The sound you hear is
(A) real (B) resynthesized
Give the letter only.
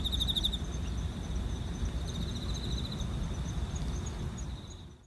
A